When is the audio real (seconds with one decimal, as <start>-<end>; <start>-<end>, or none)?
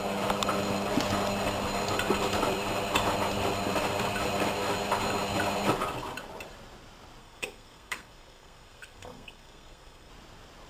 0.0-7.2; 10.1-10.7